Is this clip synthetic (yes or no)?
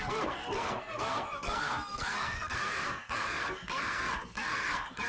yes